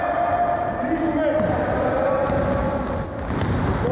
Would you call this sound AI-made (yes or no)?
no